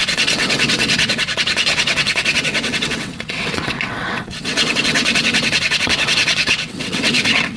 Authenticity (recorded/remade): remade